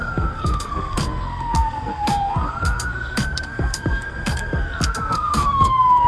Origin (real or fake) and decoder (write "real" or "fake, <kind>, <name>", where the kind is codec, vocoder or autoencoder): fake, codec, SNAC